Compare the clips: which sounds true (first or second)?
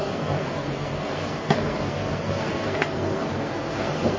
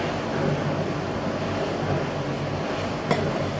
second